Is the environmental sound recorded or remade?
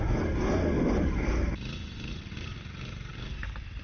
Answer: recorded